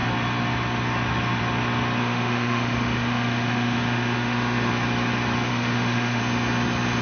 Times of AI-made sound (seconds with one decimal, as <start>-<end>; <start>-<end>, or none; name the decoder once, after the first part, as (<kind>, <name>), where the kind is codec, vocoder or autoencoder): 2.0-4.7 (autoencoder, DAC-VAE); 5.5-6.2